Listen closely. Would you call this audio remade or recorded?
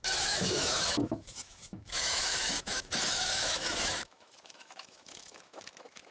remade